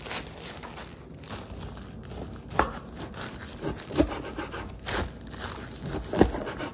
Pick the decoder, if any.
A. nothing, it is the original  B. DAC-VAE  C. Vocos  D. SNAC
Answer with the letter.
A